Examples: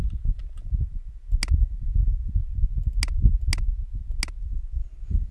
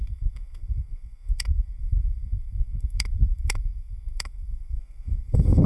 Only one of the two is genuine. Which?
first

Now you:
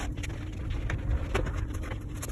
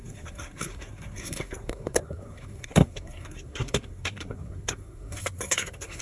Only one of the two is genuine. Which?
first